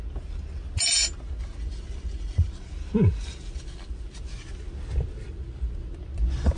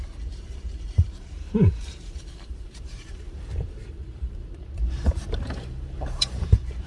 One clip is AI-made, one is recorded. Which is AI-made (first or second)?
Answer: second